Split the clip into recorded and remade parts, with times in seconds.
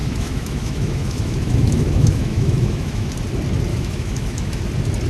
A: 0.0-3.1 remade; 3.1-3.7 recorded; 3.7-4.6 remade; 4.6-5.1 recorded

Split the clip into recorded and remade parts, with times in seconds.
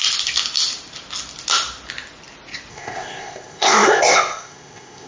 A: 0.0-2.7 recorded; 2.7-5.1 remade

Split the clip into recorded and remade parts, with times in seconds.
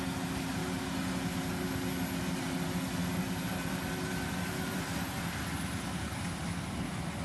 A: 0.0-7.2 recorded